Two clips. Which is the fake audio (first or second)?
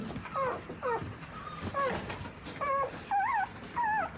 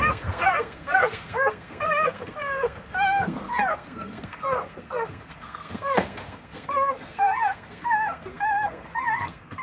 second